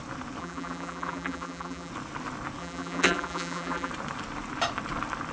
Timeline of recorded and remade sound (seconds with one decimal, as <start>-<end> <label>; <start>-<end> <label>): 0.0-0.4 recorded; 0.4-1.9 remade; 1.9-2.6 recorded; 2.6-3.9 remade; 3.9-5.3 recorded